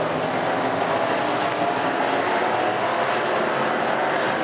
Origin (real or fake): real